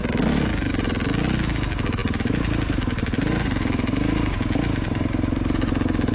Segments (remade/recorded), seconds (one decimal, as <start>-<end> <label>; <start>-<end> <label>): 0.0-2.0 recorded; 2.0-6.1 remade

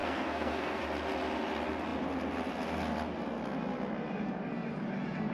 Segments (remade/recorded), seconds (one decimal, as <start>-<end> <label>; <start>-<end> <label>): 0.0-0.8 remade; 0.8-5.3 recorded

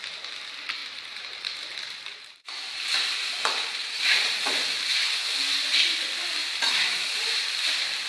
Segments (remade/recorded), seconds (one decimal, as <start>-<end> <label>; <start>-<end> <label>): 0.0-0.8 recorded; 0.8-4.5 remade; 4.5-6.4 recorded; 6.4-7.4 remade; 7.4-8.1 recorded

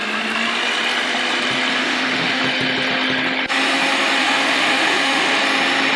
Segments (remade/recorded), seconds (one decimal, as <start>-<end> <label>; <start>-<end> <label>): 0.0-1.7 recorded; 1.7-2.4 remade; 2.4-4.2 recorded; 4.2-5.4 remade; 5.4-6.0 recorded

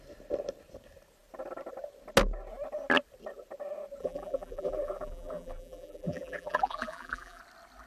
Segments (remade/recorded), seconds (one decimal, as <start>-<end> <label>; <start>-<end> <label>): 0.0-4.0 recorded; 4.0-7.4 remade; 7.4-7.9 recorded

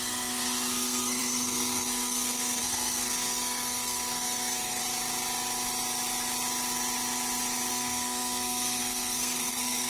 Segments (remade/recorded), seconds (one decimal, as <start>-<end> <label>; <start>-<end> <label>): 0.0-4.8 remade; 4.8-7.7 recorded; 7.7-9.9 remade